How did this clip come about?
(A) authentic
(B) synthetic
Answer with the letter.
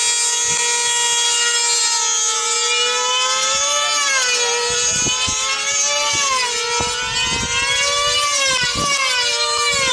A